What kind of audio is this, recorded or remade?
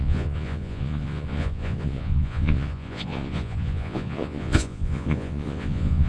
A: remade